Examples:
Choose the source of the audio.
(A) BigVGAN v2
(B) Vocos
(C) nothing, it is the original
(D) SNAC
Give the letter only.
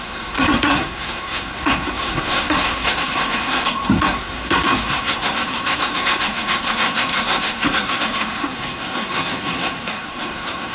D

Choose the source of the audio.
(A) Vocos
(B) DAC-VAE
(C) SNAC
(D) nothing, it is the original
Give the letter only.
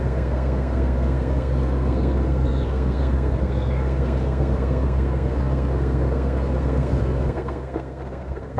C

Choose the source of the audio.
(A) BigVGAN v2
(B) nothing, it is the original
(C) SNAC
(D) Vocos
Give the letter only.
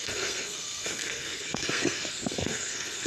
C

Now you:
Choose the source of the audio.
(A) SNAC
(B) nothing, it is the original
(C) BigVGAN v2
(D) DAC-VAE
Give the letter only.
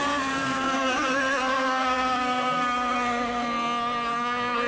A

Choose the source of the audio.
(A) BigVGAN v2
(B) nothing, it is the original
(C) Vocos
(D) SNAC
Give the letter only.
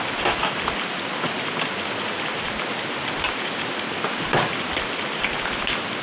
B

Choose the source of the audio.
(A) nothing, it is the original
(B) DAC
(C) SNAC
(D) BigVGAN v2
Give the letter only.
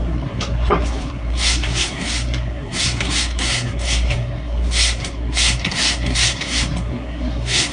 C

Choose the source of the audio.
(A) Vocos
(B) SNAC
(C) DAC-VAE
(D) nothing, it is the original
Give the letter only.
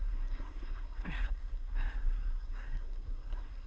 B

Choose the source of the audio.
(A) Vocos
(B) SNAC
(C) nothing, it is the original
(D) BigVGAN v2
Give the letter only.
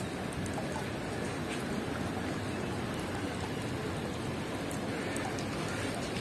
C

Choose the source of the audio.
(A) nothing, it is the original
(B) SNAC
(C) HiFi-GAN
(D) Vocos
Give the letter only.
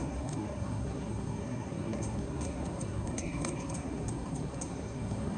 B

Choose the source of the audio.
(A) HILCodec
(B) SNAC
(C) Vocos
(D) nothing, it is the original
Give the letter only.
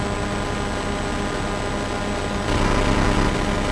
D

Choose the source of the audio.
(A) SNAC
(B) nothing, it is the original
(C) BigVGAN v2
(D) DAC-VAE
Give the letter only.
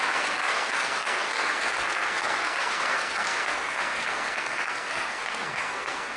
A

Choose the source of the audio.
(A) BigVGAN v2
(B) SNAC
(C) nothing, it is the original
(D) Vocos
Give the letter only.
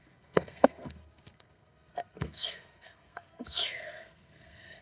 B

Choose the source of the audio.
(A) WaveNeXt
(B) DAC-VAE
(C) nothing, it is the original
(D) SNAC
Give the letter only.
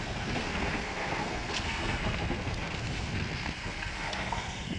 D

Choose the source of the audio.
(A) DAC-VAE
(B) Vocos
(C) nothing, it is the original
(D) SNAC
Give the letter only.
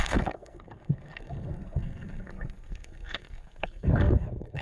D